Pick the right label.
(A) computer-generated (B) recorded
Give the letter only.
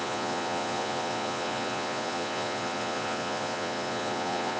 A